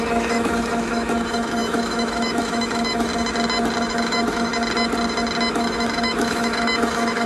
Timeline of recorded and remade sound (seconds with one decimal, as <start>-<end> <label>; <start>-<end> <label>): 0.0-3.1 remade; 3.1-3.9 recorded; 3.9-4.5 remade; 4.5-5.5 recorded; 5.5-7.3 remade